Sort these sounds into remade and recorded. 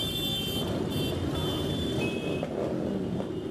recorded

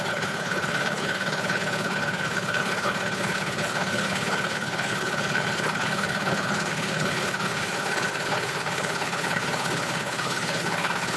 remade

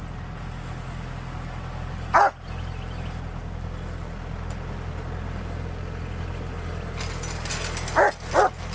recorded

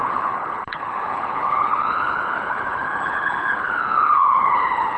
remade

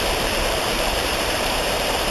remade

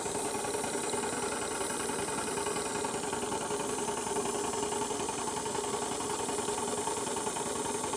recorded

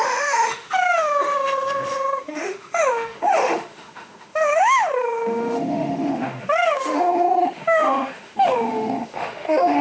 remade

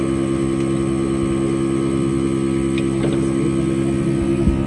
recorded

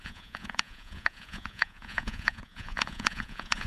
remade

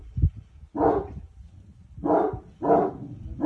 recorded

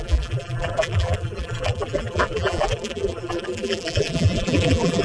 remade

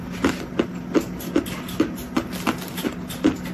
recorded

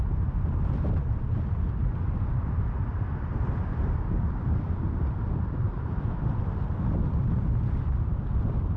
remade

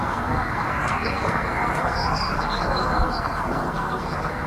remade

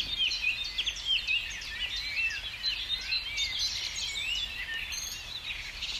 recorded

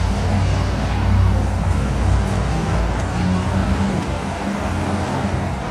remade